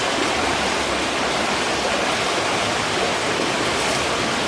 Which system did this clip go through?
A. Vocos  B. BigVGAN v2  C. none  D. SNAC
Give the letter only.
C